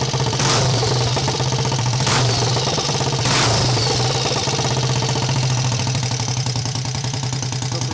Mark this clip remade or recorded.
remade